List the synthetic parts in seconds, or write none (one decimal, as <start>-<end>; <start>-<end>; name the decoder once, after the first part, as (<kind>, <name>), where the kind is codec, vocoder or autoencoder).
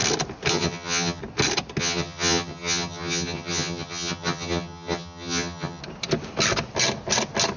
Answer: 0.5-1.2 (vocoder, HiFi-GAN); 1.8-5.8